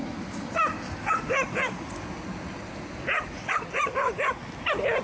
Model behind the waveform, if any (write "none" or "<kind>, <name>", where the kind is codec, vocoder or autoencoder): none